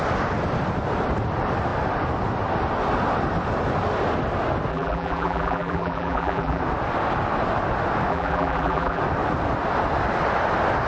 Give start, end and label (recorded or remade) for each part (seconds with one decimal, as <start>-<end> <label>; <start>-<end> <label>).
0.0-4.7 recorded; 4.7-6.6 remade; 6.6-8.1 recorded; 8.1-9.0 remade; 9.0-10.9 recorded